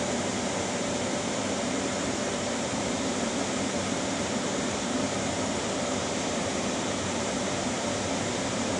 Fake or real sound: fake